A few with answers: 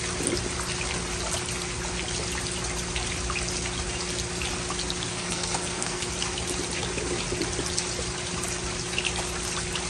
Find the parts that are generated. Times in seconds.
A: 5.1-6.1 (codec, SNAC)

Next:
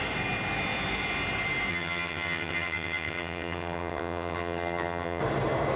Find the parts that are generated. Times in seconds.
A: 1.7-5.2 (vocoder, HiFi-GAN)

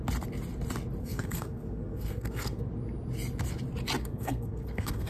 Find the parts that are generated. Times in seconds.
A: 1.0-2.6 (codec, SNAC); 4.0-5.1

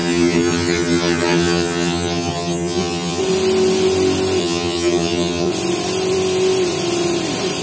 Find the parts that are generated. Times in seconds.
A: 0.0-3.2 (vocoder, HiFi-GAN); 4.4-5.5

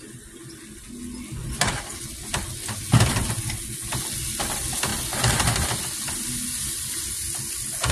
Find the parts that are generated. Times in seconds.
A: 1.4-2.0 (vocoder, BigVGAN v2)